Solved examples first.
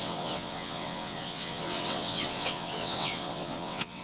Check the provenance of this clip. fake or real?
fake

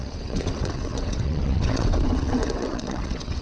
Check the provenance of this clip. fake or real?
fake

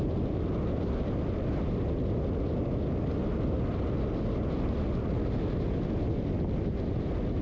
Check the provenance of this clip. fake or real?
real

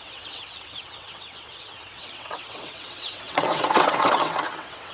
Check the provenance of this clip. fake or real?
fake